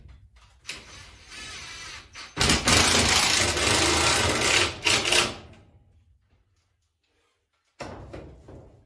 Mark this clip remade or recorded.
recorded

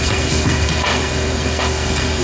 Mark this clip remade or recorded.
remade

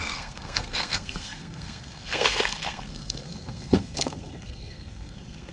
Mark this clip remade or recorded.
remade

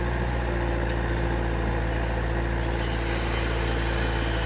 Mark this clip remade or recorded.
recorded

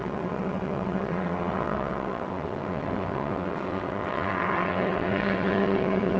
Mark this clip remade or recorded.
remade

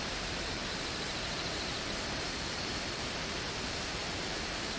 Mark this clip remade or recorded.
remade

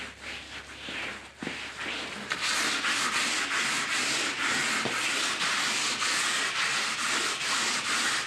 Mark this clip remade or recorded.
recorded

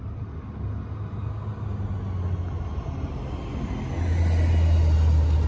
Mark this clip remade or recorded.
recorded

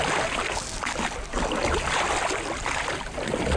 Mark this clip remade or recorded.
recorded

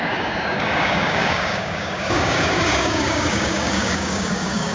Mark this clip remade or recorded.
remade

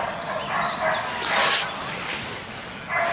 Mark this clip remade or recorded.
recorded